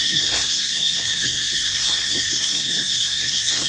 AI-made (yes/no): yes